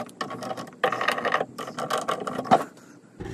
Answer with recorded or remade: recorded